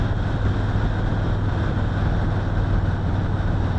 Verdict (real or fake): real